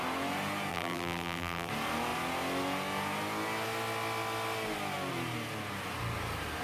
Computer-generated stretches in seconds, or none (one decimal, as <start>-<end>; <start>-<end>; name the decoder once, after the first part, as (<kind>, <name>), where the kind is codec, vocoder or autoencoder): 0.7-1.7 (vocoder, BigVGAN v2)